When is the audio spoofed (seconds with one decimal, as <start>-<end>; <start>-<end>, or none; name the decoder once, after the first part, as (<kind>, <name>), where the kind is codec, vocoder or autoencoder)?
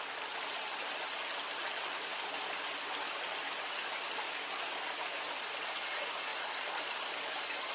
3.4-4.4 (vocoder, BigVGAN v2); 6.3-7.0